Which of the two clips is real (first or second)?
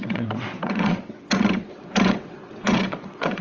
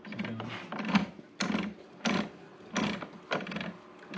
second